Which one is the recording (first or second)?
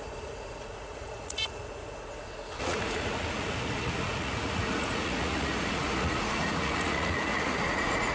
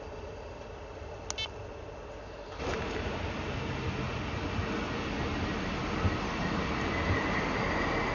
second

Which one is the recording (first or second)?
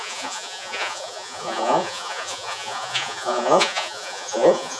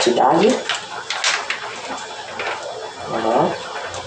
second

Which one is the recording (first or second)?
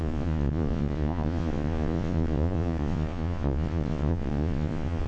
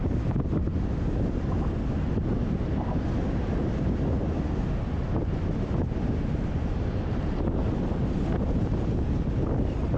second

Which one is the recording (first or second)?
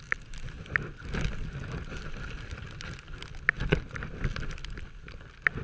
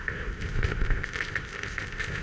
first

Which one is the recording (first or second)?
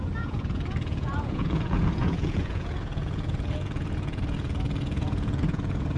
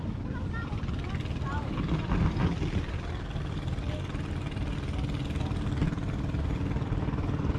second